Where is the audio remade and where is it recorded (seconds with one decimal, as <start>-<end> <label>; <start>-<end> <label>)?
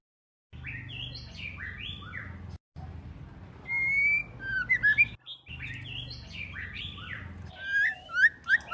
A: 0.0-8.7 recorded